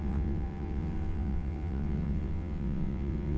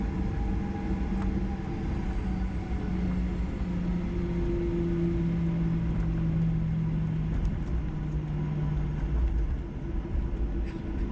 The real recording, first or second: second